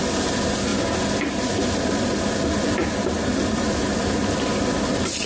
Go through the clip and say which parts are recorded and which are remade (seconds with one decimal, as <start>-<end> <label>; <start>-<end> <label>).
0.0-5.3 recorded